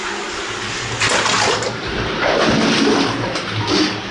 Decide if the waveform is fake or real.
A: real